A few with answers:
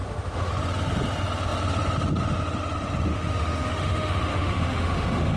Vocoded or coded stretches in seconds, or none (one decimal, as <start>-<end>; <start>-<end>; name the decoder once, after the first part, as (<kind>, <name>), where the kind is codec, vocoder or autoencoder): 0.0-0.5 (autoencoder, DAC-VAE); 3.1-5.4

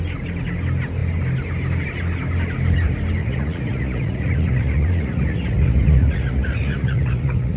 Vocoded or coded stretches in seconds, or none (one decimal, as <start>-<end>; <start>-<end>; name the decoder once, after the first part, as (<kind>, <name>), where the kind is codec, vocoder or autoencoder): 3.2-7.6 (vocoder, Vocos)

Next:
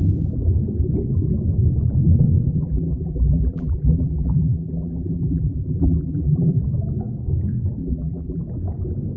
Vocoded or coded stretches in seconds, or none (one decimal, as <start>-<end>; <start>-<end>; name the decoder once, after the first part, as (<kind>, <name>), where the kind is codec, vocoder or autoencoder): 2.5-6.6 (vocoder, BigVGAN v2); 7.8-8.4